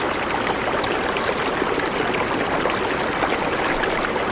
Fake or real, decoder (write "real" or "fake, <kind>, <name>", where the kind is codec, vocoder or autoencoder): real